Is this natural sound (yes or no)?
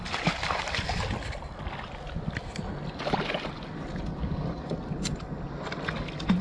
yes